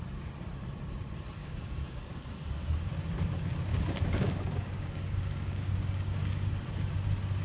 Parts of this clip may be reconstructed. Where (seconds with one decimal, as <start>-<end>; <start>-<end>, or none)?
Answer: 1.4-2.9; 3.7-6.5